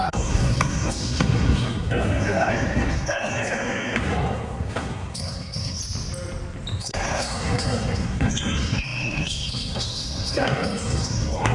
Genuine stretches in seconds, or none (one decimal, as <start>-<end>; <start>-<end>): 5.8-6.8

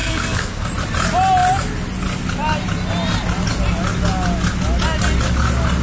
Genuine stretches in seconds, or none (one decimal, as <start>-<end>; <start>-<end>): 0.7-5.8

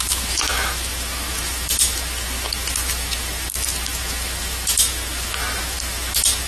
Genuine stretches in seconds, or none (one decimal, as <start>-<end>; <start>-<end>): none